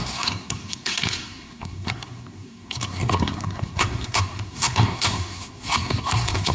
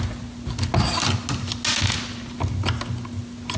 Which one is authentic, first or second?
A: second